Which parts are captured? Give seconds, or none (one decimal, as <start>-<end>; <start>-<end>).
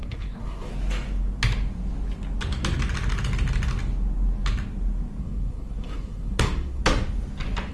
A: 0.7-5.2; 6.8-7.7